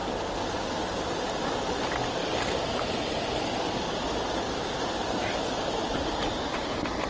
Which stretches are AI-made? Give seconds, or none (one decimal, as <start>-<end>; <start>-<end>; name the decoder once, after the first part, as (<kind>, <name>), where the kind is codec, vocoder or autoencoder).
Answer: none